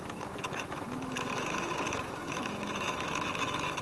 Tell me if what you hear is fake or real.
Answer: fake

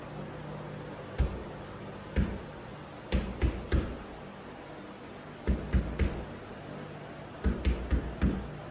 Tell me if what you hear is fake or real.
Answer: real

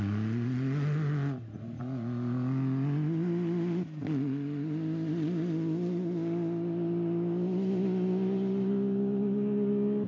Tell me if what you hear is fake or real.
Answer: real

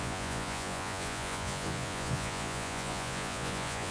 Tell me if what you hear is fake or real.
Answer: fake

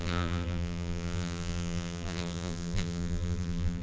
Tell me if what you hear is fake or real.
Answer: fake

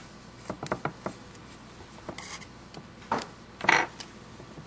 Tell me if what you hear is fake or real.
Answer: real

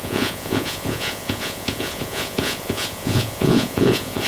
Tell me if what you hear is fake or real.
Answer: fake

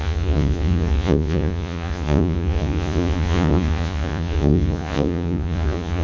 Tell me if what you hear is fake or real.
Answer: fake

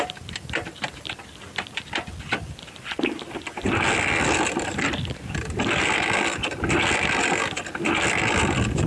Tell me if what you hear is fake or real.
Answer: real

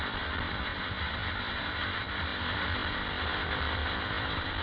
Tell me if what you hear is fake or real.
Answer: real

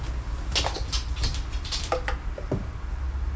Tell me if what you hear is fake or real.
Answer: real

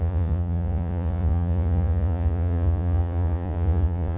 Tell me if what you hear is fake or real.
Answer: fake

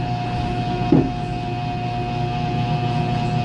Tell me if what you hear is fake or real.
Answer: real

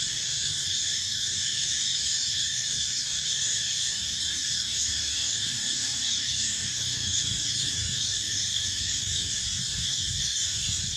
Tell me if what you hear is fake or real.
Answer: fake